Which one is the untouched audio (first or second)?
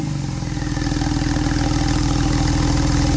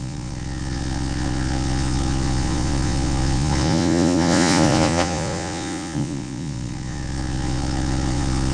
first